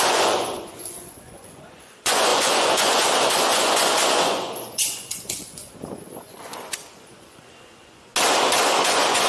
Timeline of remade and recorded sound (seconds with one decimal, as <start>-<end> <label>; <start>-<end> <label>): 0.0-8.1 remade; 8.1-8.8 recorded; 8.8-9.3 remade